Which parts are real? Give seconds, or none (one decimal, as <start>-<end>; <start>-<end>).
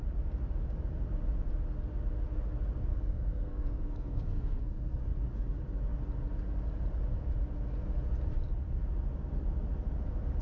0.0-2.9; 5.0-10.4